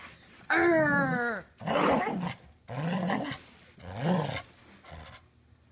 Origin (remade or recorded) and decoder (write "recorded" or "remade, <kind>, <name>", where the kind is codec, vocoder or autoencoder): recorded